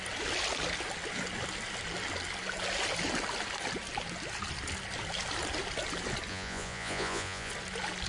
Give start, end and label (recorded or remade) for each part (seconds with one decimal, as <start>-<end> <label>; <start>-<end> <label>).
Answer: 0.0-6.3 recorded; 6.3-7.5 remade; 7.5-8.1 recorded